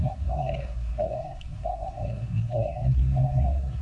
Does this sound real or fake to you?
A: fake